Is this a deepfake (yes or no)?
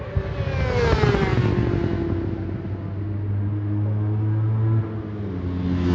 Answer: no